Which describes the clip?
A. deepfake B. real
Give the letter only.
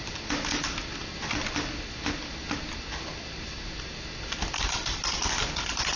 B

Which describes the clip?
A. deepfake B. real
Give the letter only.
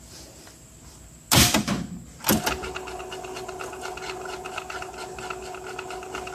B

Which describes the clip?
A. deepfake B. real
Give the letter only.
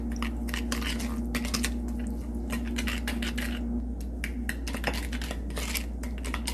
B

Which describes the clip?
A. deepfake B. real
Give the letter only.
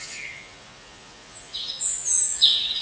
A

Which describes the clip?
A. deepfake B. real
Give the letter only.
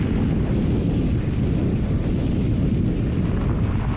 B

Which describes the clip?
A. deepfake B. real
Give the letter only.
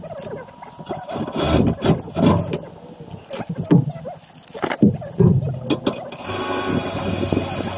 B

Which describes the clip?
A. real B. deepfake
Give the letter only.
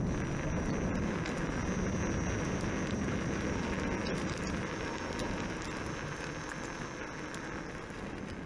A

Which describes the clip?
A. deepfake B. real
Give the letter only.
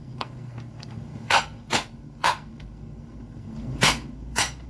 A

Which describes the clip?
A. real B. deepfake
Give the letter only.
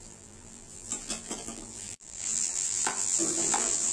B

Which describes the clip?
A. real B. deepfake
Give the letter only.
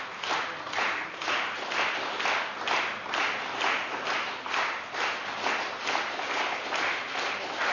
A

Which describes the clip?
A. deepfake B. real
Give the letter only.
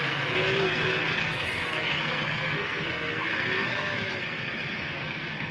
A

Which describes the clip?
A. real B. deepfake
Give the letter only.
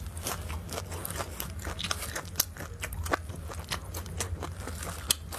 A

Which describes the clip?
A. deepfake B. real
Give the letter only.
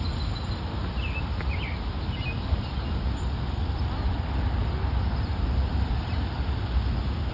B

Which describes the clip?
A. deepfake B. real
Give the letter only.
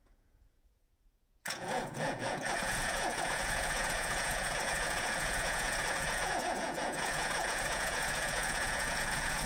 A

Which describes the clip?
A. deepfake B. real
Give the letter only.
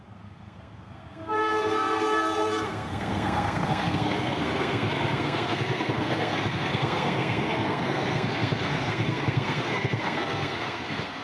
A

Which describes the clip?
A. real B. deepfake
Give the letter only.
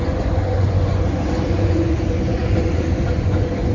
B